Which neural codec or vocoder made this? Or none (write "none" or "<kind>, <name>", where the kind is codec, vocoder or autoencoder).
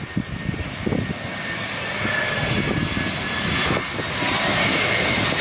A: none